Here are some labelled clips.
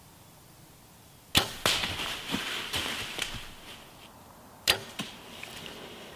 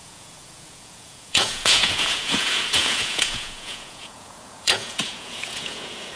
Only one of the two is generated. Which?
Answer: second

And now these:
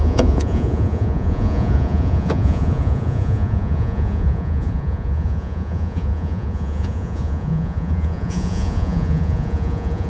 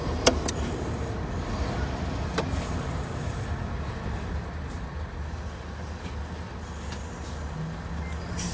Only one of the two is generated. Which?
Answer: first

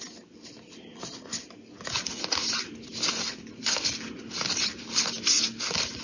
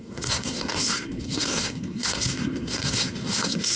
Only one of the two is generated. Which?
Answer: second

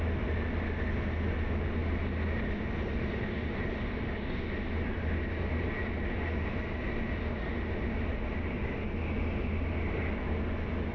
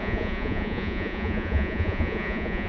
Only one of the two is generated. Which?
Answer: second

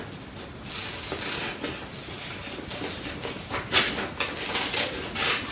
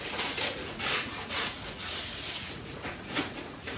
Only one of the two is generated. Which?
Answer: second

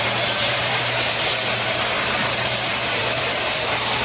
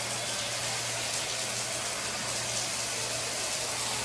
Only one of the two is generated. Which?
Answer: first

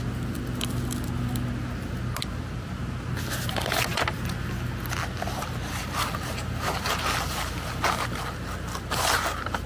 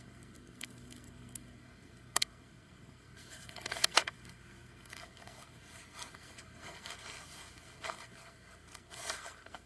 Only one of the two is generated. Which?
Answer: second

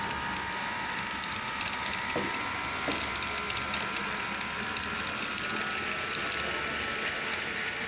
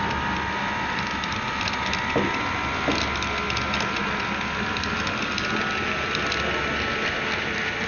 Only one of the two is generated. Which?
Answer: first